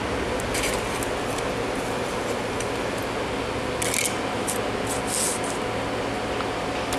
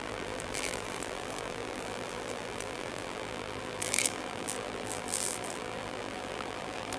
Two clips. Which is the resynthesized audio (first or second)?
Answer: second